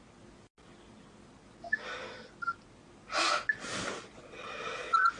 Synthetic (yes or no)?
no